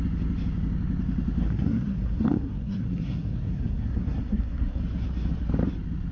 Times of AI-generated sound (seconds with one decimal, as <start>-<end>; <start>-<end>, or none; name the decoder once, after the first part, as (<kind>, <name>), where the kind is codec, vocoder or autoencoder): 1.4-4.8 (codec, SNAC)